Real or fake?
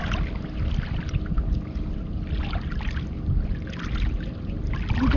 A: real